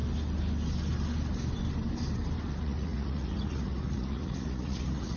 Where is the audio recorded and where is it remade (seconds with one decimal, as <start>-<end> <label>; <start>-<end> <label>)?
0.0-2.5 recorded; 2.5-5.2 remade